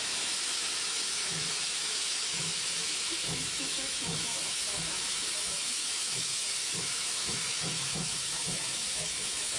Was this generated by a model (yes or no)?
yes